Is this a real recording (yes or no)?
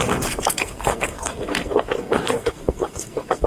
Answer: no